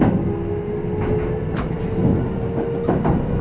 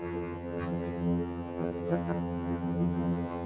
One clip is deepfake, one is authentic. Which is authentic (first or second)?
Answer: first